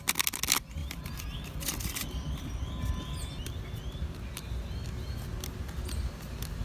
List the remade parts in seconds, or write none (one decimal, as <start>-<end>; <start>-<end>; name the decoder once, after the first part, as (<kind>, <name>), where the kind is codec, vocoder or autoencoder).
0.8-1.6 (vocoder, BigVGAN v2)